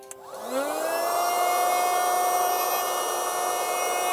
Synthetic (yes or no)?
no